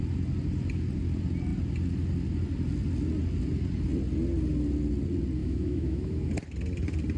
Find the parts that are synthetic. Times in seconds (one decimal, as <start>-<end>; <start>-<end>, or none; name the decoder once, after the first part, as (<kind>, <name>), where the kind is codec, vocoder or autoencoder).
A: 5.4-6.3 (autoencoder, DAC-VAE)